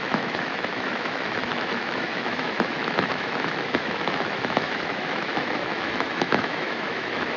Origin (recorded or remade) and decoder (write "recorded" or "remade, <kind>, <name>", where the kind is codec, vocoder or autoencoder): remade, autoencoder, DAC-VAE